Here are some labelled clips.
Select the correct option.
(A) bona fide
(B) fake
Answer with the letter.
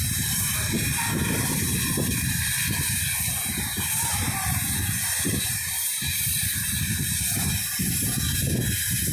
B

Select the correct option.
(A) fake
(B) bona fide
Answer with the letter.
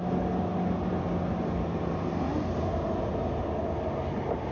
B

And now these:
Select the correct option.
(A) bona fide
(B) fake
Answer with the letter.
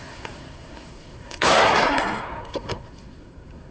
B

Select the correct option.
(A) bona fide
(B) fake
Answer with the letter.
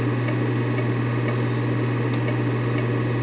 A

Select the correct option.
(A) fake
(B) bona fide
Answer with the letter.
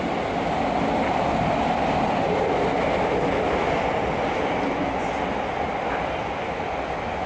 B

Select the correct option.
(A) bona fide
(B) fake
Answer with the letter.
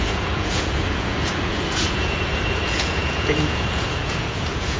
B